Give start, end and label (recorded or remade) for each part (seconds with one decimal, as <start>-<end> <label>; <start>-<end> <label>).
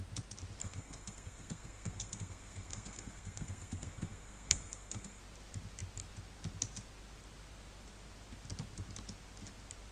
0.0-0.6 recorded; 0.6-5.2 remade; 5.2-9.9 recorded